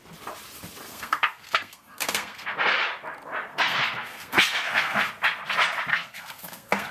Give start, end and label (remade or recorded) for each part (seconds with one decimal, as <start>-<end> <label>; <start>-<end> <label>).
0.0-0.9 recorded; 0.9-2.6 remade; 2.6-3.5 recorded; 3.5-5.1 remade; 5.1-5.9 recorded; 5.9-6.9 remade